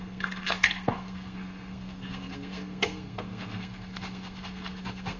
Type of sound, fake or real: fake